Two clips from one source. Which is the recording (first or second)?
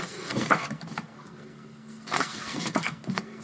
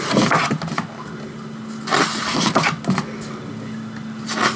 second